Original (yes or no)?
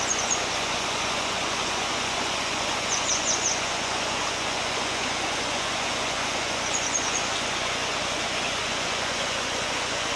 no